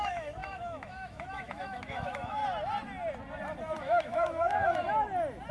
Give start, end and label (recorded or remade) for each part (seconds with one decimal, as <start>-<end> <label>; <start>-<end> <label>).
0.0-2.4 remade; 2.4-3.8 recorded; 3.8-4.6 remade; 4.6-5.5 recorded